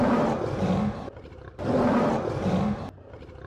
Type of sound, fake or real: real